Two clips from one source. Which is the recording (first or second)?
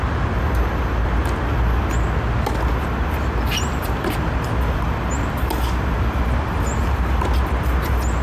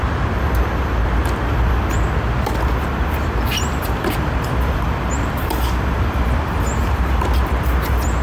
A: first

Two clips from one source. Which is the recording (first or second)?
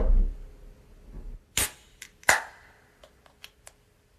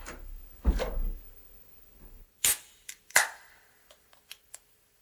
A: first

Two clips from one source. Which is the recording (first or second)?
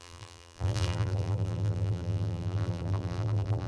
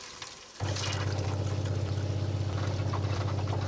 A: second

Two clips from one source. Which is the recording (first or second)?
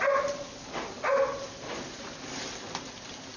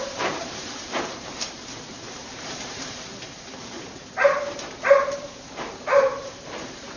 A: first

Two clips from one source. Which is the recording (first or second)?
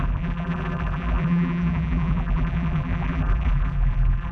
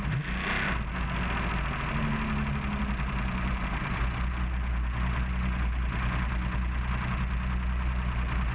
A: second